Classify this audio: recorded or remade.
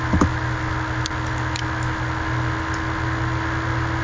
recorded